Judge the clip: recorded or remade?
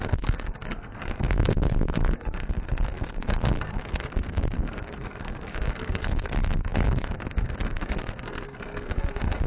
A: remade